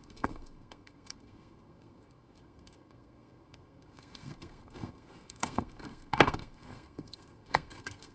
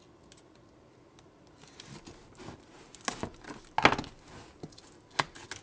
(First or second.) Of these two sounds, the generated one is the first